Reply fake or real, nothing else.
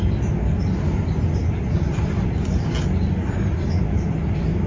real